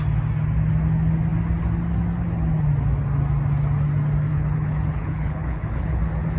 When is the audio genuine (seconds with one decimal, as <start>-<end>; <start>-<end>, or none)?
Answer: 0.0-4.3; 6.0-6.4